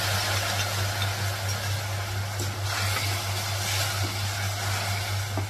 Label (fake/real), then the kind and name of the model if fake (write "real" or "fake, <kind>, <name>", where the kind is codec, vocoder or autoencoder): real